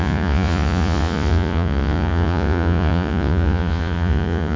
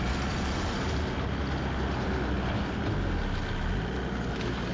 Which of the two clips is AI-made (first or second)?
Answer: first